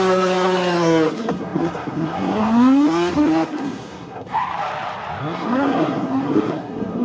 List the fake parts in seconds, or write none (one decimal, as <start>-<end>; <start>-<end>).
0.0-4.4; 5.2-7.0